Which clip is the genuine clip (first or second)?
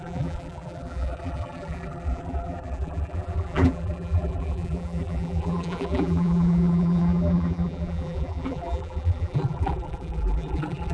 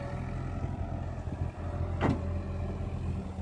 second